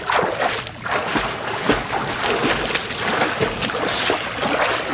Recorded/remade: recorded